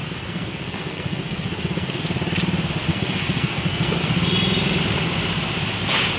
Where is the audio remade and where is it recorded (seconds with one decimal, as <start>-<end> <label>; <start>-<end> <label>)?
0.0-2.0 remade; 2.0-2.9 recorded; 2.9-4.1 remade; 4.1-6.2 recorded